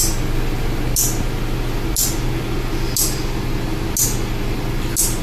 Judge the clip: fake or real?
real